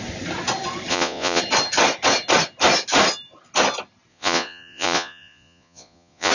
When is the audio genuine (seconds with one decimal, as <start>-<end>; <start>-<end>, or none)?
0.0-0.9; 1.4-4.1